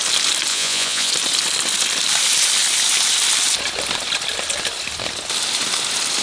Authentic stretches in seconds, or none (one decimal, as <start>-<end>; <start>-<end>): 0.0-0.5; 1.1-6.2